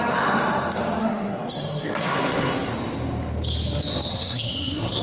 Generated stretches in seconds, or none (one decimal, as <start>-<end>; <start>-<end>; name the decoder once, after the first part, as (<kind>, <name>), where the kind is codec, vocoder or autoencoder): 1.0-2.7 (codec, SNAC); 4.1-5.0